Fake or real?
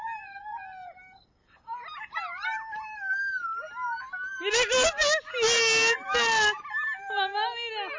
real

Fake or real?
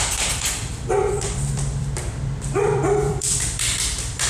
fake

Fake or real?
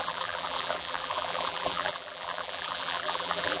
fake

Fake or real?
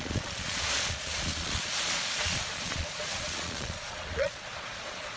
fake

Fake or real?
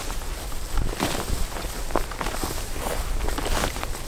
real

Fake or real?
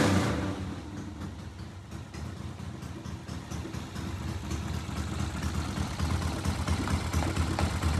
real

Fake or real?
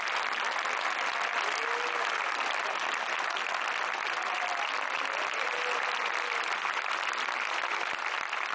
real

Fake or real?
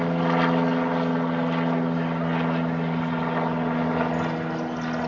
real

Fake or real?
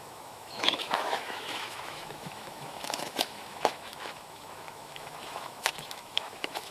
fake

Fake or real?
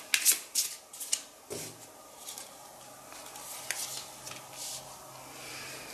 real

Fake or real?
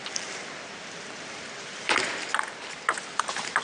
fake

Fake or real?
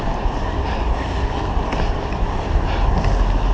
real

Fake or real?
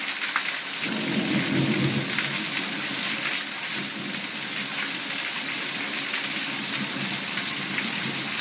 real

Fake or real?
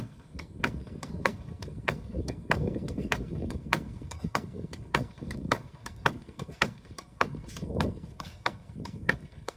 fake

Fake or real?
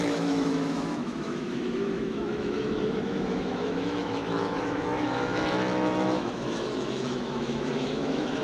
fake